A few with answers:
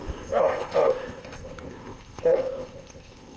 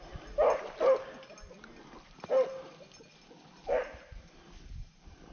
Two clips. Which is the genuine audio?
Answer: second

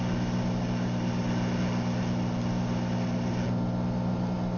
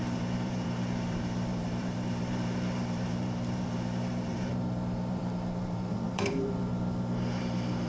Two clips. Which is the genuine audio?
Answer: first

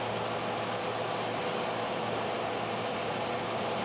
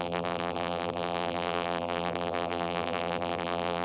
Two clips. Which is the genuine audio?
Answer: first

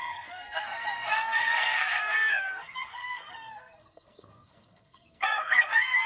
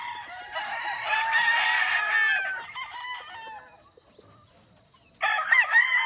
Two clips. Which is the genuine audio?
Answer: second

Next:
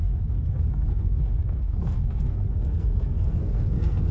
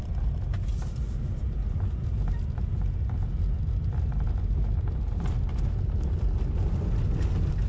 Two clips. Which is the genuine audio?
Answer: second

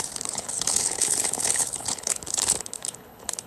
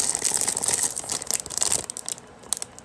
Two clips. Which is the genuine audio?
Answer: second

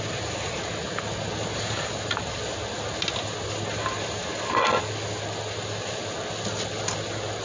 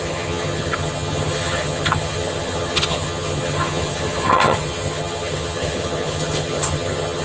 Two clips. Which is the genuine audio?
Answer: first